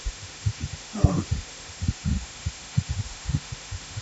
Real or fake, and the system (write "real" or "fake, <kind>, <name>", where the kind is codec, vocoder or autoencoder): fake, autoencoder, DAC-VAE